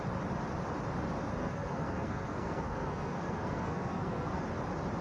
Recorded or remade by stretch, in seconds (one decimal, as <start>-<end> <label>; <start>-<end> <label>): 0.0-1.4 recorded; 1.4-4.4 remade; 4.4-5.0 recorded